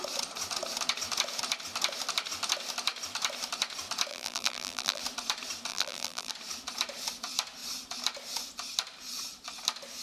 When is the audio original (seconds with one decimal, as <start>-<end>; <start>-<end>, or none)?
0.0-4.1; 5.0-5.7; 6.3-10.0